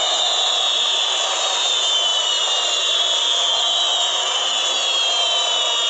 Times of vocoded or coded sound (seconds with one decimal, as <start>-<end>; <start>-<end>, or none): none